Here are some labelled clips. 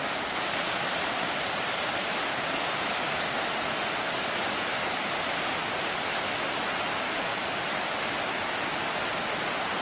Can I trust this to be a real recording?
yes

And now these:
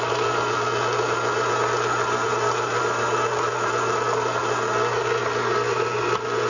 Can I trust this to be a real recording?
yes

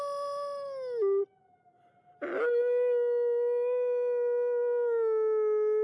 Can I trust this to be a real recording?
yes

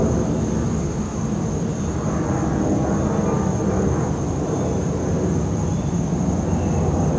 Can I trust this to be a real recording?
yes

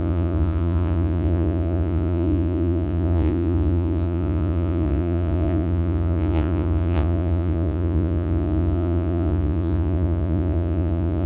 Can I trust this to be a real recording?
no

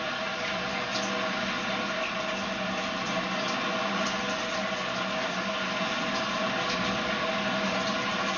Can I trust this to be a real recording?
yes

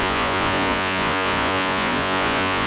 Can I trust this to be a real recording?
no